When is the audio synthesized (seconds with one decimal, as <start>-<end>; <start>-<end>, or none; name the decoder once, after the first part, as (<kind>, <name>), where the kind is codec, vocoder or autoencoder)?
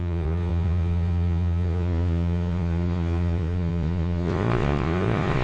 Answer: 0.0-5.4 (vocoder, Vocos)